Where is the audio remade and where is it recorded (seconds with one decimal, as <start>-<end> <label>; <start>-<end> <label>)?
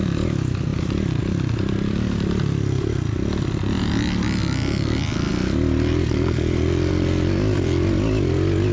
0.0-8.7 recorded